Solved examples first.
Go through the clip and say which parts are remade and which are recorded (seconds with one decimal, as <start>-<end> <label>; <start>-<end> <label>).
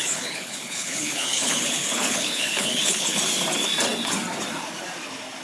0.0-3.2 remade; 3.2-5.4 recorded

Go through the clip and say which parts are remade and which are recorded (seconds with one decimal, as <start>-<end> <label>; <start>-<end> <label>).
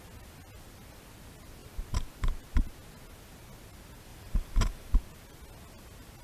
0.0-4.1 recorded; 4.1-4.9 remade; 4.9-6.2 recorded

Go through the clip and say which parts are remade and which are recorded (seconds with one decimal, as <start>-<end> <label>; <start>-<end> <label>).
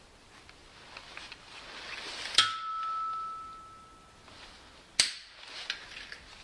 0.0-6.4 recorded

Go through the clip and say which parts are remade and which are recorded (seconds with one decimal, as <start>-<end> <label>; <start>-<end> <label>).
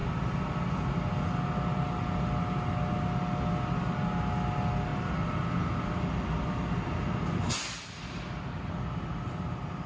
0.0-9.9 recorded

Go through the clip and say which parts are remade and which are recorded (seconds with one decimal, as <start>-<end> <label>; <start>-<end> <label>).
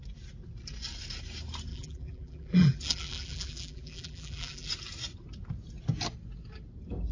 0.0-1.7 recorded; 1.7-4.7 remade; 4.7-7.1 recorded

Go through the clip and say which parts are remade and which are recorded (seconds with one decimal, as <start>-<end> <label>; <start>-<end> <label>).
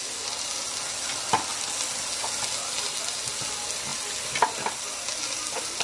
0.0-5.8 recorded